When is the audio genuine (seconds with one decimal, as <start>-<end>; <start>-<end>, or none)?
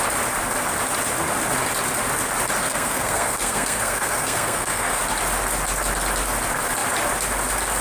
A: 0.0-2.6; 5.0-7.8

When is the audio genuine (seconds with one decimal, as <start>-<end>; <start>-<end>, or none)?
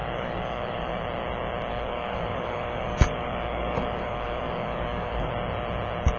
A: 1.0-1.7; 5.3-6.2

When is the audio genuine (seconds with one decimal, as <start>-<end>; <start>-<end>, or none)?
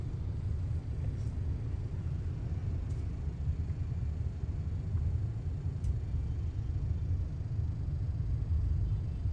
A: 0.0-9.3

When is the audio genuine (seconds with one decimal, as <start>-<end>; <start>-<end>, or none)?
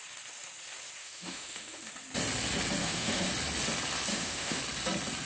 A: 0.0-1.0; 1.9-2.8; 3.3-4.1; 4.6-5.3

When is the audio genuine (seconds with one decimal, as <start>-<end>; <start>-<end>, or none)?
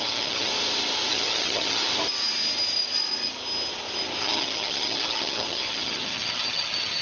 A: 0.5-1.1; 1.9-4.2